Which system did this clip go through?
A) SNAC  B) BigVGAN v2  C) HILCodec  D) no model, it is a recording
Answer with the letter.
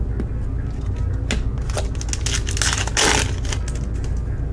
D